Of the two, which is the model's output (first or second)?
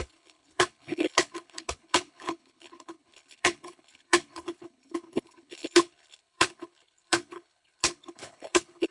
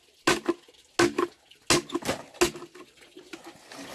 first